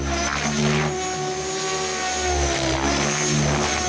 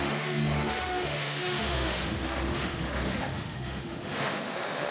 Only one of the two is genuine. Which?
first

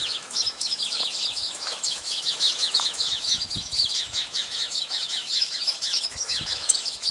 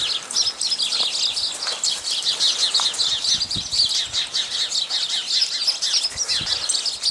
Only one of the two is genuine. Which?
second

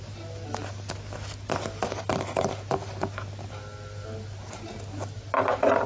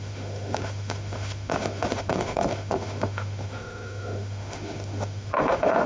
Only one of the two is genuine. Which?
first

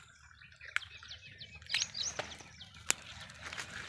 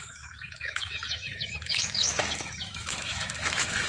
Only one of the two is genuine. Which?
first